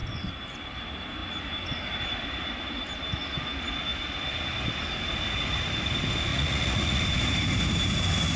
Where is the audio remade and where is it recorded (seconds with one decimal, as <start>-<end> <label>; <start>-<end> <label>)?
0.0-6.3 recorded; 6.3-7.0 remade; 7.0-8.4 recorded